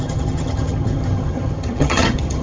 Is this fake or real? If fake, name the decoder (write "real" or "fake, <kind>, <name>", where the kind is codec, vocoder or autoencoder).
fake, vocoder, HiFi-GAN